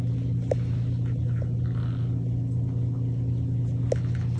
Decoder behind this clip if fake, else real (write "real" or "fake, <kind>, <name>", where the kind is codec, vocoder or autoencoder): real